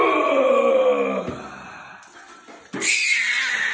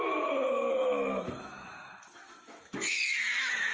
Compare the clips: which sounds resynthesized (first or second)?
second